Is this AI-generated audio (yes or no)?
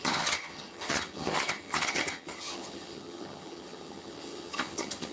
yes